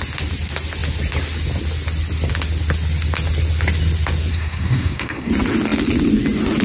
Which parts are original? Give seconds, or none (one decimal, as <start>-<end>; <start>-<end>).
0.0-4.3; 5.3-6.6